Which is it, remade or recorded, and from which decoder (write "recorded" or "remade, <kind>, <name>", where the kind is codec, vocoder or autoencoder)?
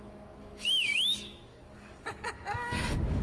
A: remade, codec, DAC